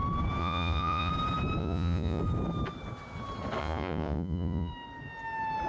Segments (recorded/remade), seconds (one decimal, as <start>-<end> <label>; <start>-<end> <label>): 0.0-0.4 recorded; 0.4-1.1 remade; 1.1-1.6 recorded; 1.6-2.2 remade; 2.2-3.6 recorded; 3.6-4.7 remade; 4.7-5.7 recorded